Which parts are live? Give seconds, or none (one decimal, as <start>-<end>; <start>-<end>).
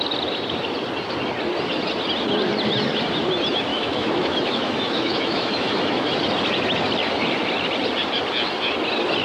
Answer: 0.0-3.7; 6.2-9.2